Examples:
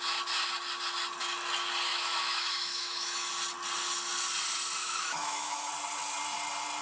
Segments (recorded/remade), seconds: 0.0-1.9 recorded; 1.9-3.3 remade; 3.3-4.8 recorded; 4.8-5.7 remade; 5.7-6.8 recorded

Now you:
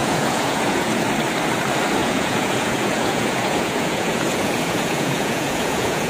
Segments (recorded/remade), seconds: 0.0-1.1 remade; 1.1-2.0 recorded; 2.0-6.1 remade

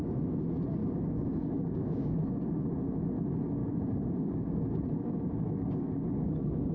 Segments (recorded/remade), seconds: 0.0-0.8 recorded; 0.8-2.6 remade; 2.6-3.6 recorded; 3.6-6.7 remade